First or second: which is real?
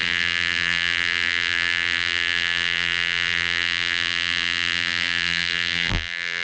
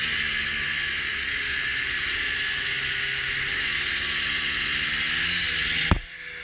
second